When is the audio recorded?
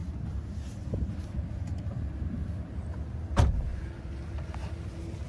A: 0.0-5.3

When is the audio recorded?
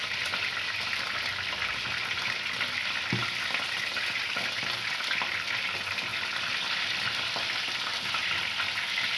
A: 0.0-9.2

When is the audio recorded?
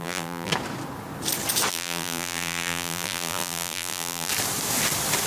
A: 0.5-1.7; 4.3-5.3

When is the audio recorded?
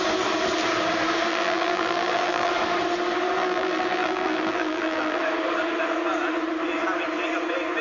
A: 0.0-1.3; 2.5-3.4; 5.2-7.8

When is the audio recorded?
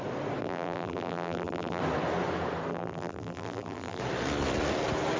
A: 0.0-0.4; 1.8-2.7; 4.0-5.2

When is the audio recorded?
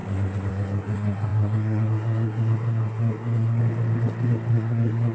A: 0.0-0.5; 3.6-4.5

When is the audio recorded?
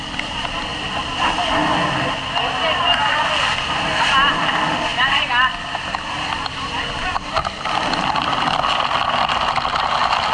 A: 0.0-10.3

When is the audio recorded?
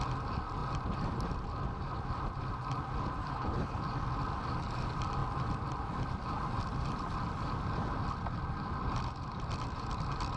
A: 0.0-3.2; 3.8-10.4